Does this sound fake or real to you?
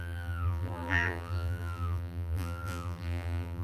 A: fake